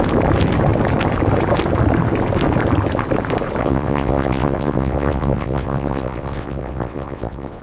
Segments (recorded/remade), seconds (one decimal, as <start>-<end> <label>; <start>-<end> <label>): 0.0-3.6 recorded; 3.6-7.6 remade